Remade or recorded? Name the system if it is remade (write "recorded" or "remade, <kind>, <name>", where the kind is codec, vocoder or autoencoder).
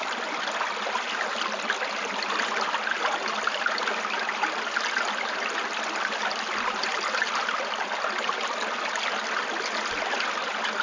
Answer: recorded